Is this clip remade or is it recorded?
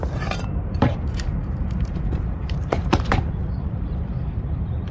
remade